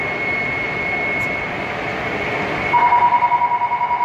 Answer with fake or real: real